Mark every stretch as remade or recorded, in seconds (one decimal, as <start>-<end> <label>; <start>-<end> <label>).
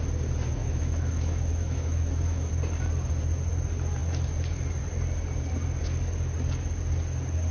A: 0.0-0.6 recorded; 0.6-2.5 remade; 2.5-7.5 recorded